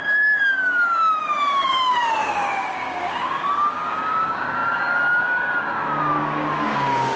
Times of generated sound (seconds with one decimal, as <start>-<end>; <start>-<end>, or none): 0.0-7.2